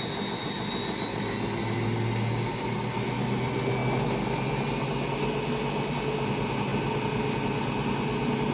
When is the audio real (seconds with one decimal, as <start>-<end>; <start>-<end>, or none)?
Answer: 0.0-8.5